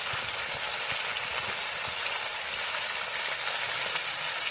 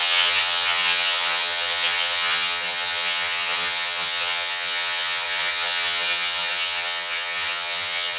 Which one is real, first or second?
first